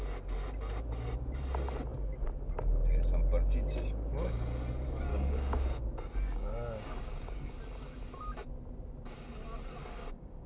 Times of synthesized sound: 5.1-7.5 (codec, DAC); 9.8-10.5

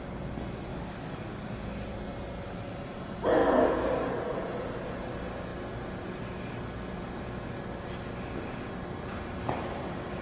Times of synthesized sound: 0.7-1.3 (codec, DAC)

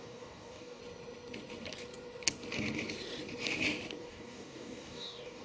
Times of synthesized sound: 0.0-0.8 (codec, DAC); 4.0-5.4